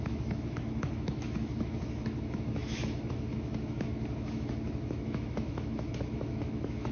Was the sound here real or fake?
fake